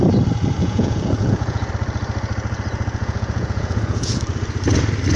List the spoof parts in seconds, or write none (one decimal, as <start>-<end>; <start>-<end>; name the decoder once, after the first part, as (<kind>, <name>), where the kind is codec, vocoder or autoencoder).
0.6-1.7 (vocoder, Vocos); 3.0-4.2